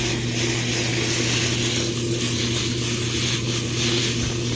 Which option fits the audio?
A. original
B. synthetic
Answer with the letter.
A